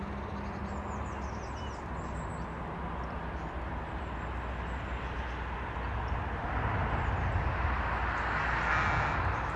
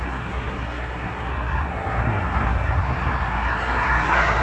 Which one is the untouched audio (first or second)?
first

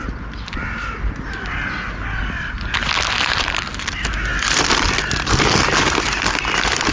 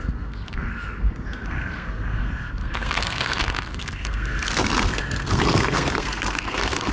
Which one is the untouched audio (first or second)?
first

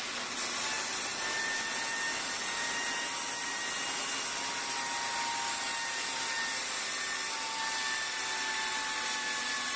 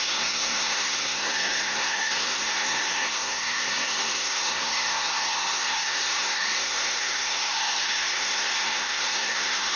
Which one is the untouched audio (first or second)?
first